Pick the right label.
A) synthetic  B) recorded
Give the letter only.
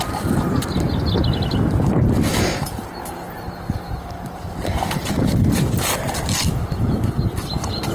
B